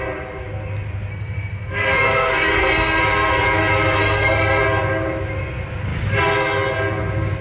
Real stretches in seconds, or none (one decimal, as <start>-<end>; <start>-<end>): 0.0-1.1; 3.0-4.0; 4.6-7.4